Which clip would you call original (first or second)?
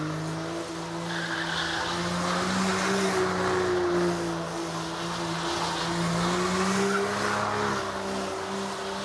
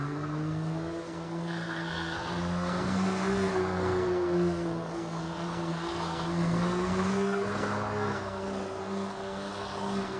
first